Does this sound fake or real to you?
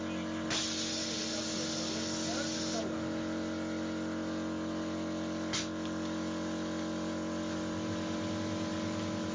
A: real